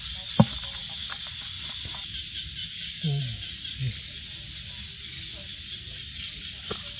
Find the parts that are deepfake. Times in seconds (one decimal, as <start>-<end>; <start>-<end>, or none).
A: 0.8-1.3; 2.6-3.2